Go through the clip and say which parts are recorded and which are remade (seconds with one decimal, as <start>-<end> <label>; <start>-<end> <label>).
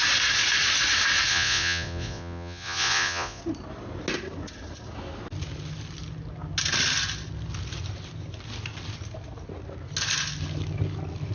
0.0-1.3 recorded; 1.3-3.4 remade; 3.4-11.3 recorded